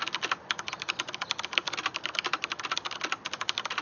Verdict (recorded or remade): recorded